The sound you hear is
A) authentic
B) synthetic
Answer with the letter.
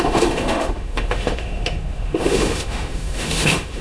B